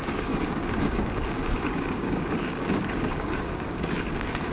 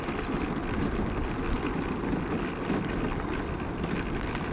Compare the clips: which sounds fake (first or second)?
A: first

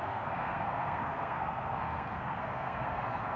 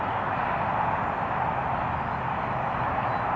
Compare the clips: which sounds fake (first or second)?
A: first